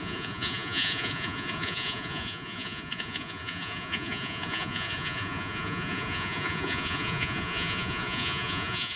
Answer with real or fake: fake